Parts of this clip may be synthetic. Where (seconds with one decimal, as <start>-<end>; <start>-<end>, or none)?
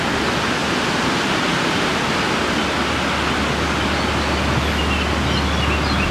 0.6-2.3